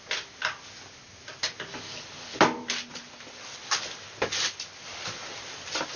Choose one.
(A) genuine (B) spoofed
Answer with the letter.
A